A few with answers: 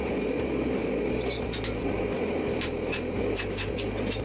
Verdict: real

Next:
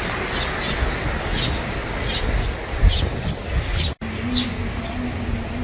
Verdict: real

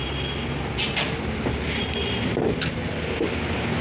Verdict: real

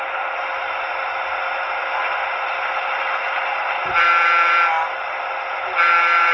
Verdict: real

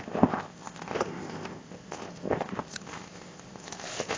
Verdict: fake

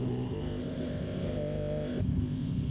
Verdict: fake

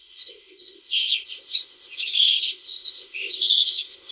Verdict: fake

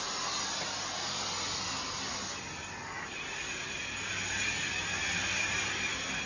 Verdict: real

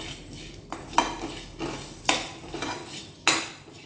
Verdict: real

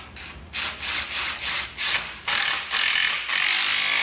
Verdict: real